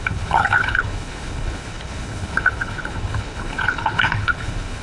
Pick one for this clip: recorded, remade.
remade